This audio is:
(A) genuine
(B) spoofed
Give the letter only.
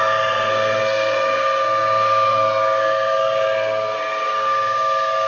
B